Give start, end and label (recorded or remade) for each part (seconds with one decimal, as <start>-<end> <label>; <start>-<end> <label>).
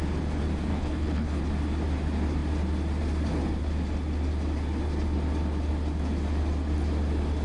0.0-0.7 recorded; 0.7-1.4 remade; 1.4-7.4 recorded